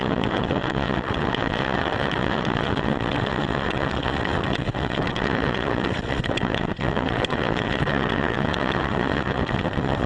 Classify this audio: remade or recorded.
remade